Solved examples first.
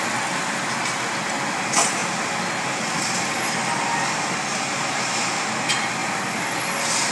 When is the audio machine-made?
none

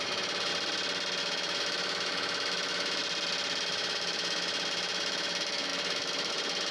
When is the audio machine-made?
0.0-0.5 (autoencoder, DAC-VAE); 1.2-3.0; 3.6-6.7